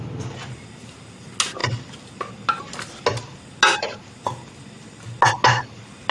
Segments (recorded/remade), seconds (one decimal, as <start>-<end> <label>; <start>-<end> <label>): 0.0-6.1 recorded